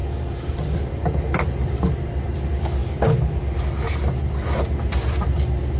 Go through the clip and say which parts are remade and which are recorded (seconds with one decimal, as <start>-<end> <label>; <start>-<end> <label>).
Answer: 0.0-5.8 recorded